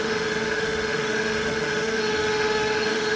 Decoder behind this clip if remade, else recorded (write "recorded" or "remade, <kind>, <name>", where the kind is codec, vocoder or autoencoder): remade, autoencoder, DAC-VAE